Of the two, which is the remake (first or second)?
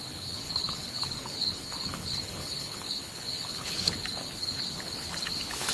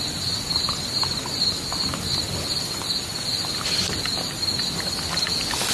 first